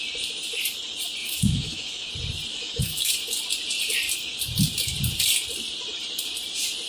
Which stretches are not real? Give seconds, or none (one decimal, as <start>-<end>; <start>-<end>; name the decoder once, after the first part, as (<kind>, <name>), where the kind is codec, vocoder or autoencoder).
1.2-2.1 (autoencoder, DAC-VAE); 2.5-3.1